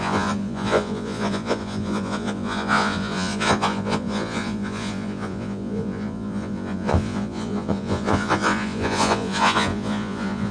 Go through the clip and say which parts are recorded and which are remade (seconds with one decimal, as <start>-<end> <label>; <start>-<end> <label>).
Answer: 0.0-10.5 remade